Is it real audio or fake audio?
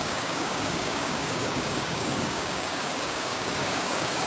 fake